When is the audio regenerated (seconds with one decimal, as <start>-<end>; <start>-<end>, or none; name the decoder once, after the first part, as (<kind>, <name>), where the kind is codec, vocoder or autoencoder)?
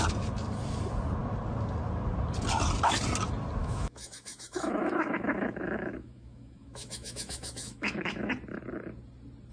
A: 3.6-8.3 (autoencoder, DAC-VAE)